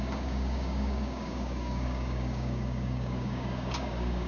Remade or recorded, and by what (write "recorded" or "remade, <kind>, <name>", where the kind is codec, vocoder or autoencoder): remade, codec, DAC